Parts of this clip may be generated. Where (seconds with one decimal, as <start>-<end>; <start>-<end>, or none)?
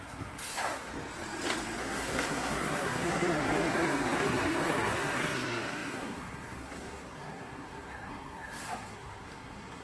0.0-0.9; 1.8-9.8